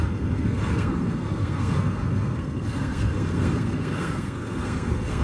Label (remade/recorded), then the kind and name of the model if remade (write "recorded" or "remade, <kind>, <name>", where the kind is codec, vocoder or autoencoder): remade, codec, SNAC